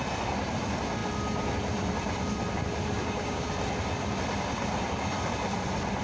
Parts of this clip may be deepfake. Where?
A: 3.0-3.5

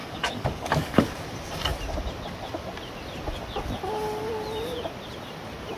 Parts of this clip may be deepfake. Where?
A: 0.0-1.1

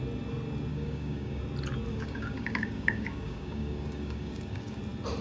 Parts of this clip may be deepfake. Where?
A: 0.7-1.4; 1.9-4.8

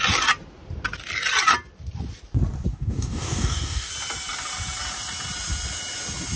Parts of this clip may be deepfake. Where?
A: 2.7-3.9

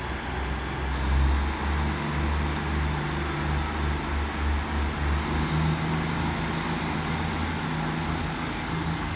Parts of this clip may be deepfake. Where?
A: 8.2-9.2

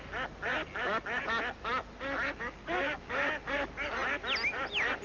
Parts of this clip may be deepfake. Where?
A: none

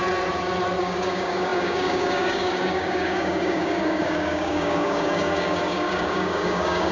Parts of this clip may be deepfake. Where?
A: 0.8-6.9

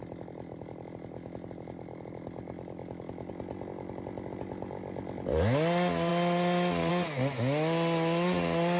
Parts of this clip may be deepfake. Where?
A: none